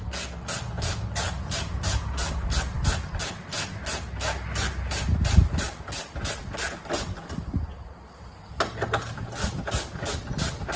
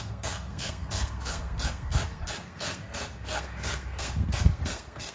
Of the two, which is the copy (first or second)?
second